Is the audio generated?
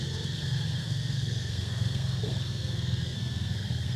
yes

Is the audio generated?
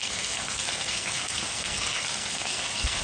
yes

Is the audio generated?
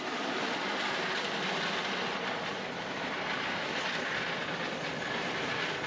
yes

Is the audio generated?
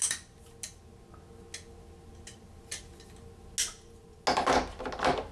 no